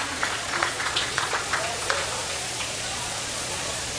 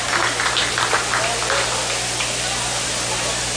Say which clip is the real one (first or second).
second